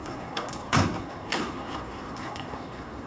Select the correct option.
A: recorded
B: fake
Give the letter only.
B